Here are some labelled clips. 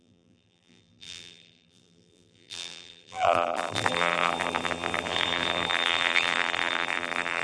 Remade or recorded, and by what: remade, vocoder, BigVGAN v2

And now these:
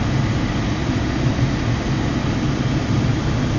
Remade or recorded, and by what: recorded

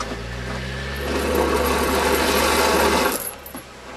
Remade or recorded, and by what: recorded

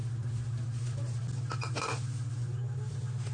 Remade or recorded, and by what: recorded